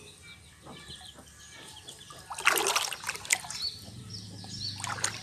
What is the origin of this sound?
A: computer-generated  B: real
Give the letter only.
B